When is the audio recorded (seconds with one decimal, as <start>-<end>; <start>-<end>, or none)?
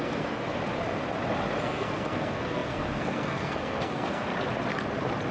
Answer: 0.6-1.6; 4.3-5.3